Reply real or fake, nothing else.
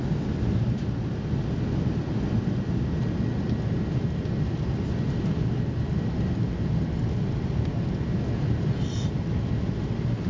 real